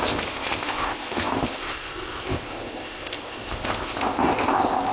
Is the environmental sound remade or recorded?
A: remade